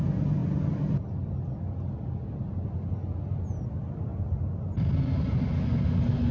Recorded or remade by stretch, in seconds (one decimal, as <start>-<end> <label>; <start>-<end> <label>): 0.0-6.3 recorded